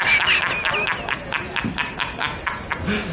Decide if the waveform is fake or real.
real